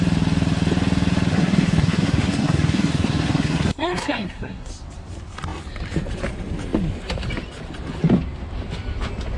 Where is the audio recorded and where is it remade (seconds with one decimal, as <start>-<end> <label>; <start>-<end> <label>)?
0.0-1.3 recorded; 1.3-4.7 remade; 4.7-9.4 recorded